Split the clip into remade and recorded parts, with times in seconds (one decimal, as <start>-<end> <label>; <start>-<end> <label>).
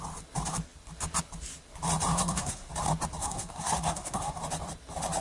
0.0-2.1 recorded; 2.1-2.7 remade; 2.7-3.2 recorded; 3.2-4.4 remade; 4.4-5.2 recorded